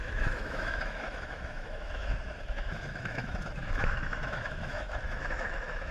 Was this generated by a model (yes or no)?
yes